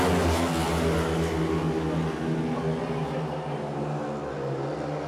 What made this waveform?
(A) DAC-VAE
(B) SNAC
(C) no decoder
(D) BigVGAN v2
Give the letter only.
C